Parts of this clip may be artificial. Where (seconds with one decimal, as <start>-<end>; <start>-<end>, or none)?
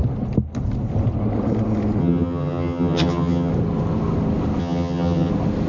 2.0-3.5; 4.6-5.3